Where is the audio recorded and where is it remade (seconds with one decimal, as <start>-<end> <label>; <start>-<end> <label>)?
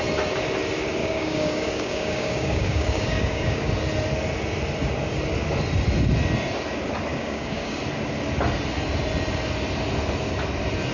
0.0-1.0 recorded; 1.0-3.7 remade; 3.7-7.1 recorded; 7.1-7.8 remade; 7.8-10.9 recorded